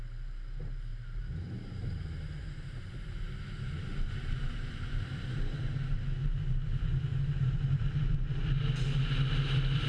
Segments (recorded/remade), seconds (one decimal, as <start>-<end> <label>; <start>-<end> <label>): 0.0-0.9 recorded; 0.9-6.1 remade; 6.1-7.1 recorded; 7.1-8.6 remade; 8.6-9.9 recorded